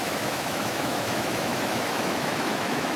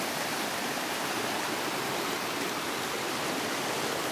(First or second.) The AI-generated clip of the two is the first